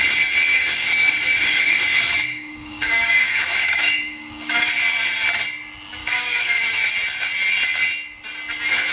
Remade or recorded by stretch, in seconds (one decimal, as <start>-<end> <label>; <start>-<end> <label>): 0.0-0.5 recorded; 0.5-4.7 remade; 4.7-6.0 recorded; 6.0-6.9 remade; 6.9-8.9 recorded